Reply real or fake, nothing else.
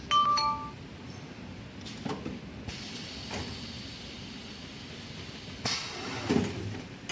real